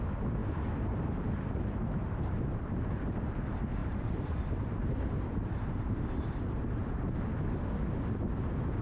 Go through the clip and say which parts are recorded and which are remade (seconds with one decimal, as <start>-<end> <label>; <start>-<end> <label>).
0.0-0.4 recorded; 0.4-3.2 remade; 3.2-3.8 recorded; 3.8-6.9 remade; 6.9-8.8 recorded